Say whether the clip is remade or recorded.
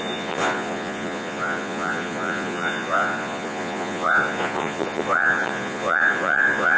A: remade